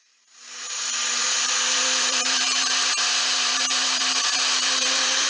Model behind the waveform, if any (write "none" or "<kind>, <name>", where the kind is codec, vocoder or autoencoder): vocoder, BigVGAN v2